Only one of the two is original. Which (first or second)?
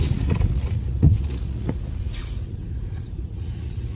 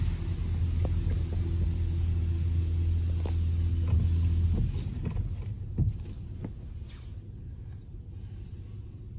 second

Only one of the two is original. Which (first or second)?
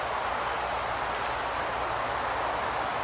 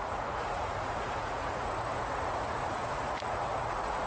first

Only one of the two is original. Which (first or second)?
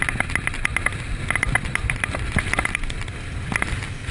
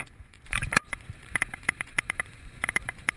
first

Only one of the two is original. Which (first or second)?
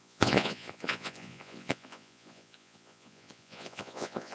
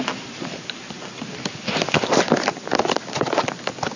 second